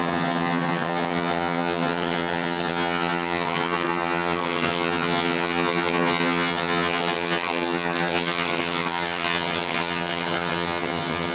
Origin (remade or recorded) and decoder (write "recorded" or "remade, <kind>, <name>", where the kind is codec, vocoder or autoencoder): remade, vocoder, HiFi-GAN